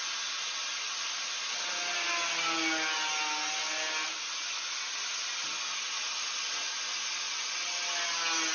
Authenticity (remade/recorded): recorded